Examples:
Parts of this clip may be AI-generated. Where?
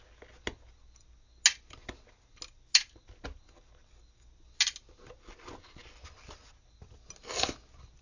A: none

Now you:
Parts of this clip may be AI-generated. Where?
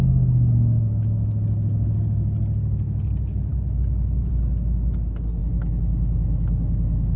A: 5.4-7.2 (autoencoder, DAC-VAE)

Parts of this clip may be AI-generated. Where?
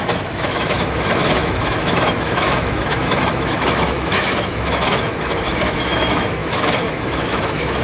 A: 0.0-7.8 (autoencoder, DAC-VAE)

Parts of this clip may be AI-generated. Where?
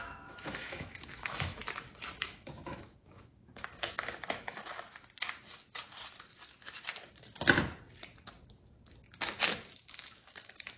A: 0.0-1.6 (autoencoder, DAC-VAE); 2.2-4.7; 9.7-10.8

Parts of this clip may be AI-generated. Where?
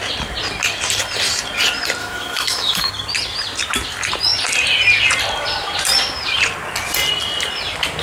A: 2.0-2.9 (autoencoder, DAC-VAE)